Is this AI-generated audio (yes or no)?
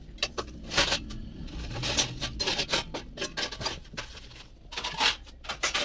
yes